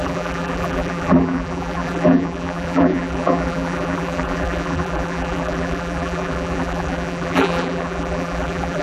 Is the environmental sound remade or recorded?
remade